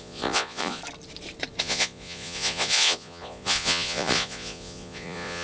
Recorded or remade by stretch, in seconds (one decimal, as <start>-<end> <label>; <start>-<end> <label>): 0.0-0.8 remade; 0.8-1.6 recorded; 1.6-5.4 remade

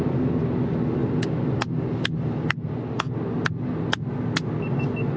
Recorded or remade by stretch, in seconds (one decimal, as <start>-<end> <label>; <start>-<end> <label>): 0.0-5.2 recorded

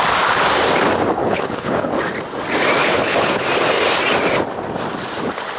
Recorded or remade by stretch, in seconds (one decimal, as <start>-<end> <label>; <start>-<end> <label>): 0.0-1.2 recorded; 1.2-1.9 remade; 1.9-2.8 recorded; 2.8-3.4 remade; 3.4-5.6 recorded